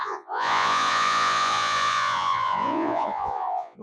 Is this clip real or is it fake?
fake